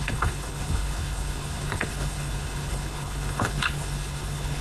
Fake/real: fake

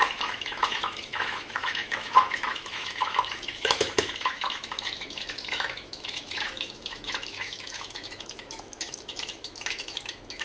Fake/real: fake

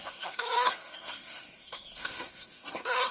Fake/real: fake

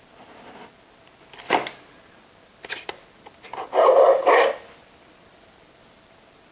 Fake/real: real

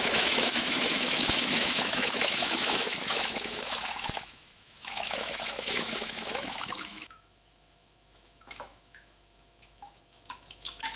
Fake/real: fake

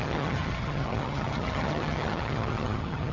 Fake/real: fake